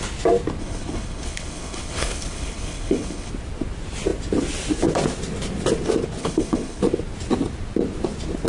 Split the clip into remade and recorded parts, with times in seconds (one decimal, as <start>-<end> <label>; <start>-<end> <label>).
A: 0.0-0.6 recorded; 0.6-3.3 remade; 3.3-6.2 recorded; 6.2-6.8 remade; 6.8-8.5 recorded